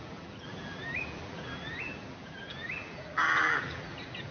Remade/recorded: remade